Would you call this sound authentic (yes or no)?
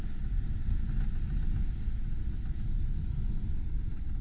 yes